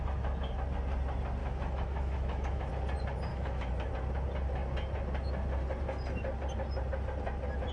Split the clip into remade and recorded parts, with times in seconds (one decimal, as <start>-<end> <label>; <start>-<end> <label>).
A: 0.0-1.4 recorded; 1.4-2.7 remade; 2.7-3.3 recorded; 3.3-3.9 remade; 3.9-7.7 recorded